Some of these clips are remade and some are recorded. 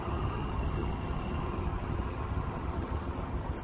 remade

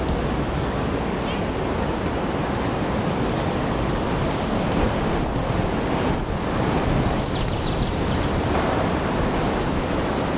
recorded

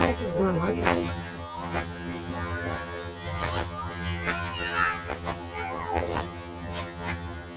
remade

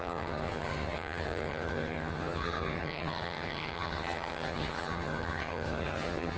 remade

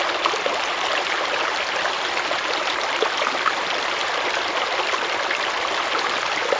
recorded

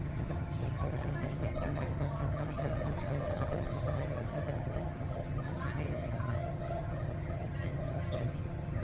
remade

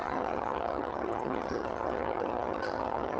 remade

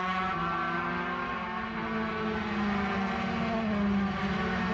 recorded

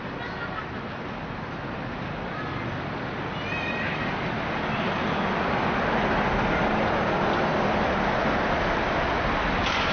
recorded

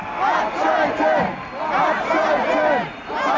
recorded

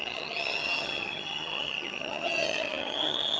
remade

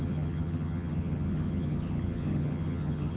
remade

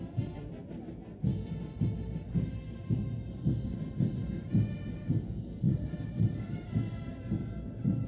recorded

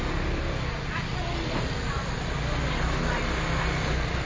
recorded